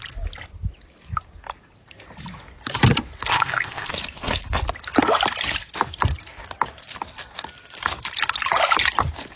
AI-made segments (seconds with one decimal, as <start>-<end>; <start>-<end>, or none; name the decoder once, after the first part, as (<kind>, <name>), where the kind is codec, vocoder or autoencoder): 3.3-3.9 (codec, ZipCodec)

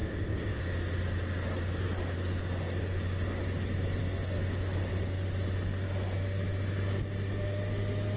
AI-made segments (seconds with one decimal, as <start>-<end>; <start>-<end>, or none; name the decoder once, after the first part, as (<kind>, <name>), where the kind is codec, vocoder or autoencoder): 0.0-0.6 (codec, ZipCodec)

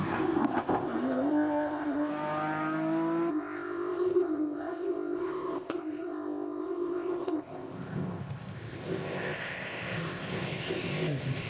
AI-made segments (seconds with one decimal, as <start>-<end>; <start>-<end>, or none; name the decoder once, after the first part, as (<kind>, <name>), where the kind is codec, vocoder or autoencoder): 0.0-2.1 (codec, ZipCodec); 3.3-11.5

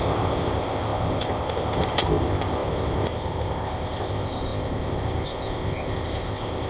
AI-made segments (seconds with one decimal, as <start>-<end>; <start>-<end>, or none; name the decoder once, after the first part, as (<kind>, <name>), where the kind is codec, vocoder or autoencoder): 0.0-6.7 (codec, ZipCodec)

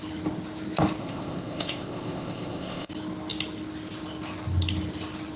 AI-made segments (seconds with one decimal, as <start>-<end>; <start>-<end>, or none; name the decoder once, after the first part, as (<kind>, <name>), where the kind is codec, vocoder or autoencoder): 1.0-2.9 (codec, ZipCodec)

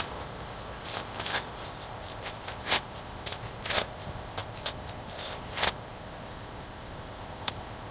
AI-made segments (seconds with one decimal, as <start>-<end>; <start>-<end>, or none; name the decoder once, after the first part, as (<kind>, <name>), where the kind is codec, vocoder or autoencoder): 0.0-7.9 (codec, ZipCodec)

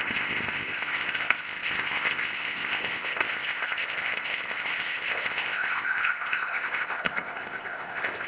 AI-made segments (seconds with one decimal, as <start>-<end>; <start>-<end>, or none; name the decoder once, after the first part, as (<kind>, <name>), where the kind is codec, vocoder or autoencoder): 0.0-8.3 (codec, ZipCodec)

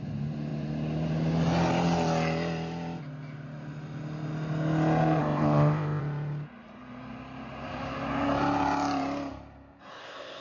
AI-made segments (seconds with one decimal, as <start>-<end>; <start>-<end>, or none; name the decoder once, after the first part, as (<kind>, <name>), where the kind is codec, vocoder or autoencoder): 5.2-6.0 (codec, ZipCodec); 9.9-10.4